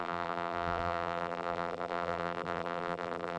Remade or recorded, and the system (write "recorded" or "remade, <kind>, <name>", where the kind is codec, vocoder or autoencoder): remade, vocoder, BigVGAN v2